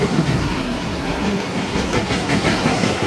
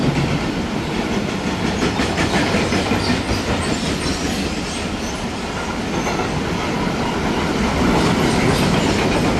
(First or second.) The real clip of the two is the second